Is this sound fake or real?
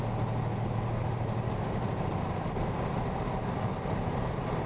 real